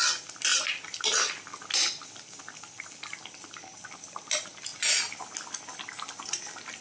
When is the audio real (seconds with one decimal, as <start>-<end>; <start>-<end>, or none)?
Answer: 0.0-6.8